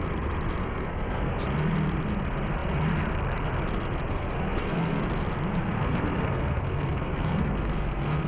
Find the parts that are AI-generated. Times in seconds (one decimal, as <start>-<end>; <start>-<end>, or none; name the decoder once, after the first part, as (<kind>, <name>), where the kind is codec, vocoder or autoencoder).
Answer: 0.6-1.3 (codec, SNAC); 4.1-5.0; 5.5-8.3